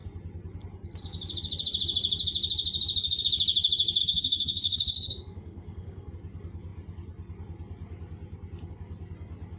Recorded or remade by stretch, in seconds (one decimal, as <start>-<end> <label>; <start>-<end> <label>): 0.0-4.0 recorded; 4.0-6.1 remade; 6.1-9.6 recorded

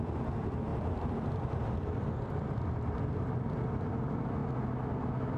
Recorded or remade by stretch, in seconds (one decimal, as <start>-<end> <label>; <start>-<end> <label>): 0.0-0.7 recorded; 0.7-3.9 remade; 3.9-5.4 recorded

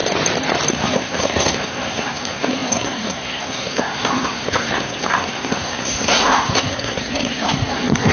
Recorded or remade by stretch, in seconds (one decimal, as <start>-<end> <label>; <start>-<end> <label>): 0.0-0.7 recorded; 0.7-8.1 remade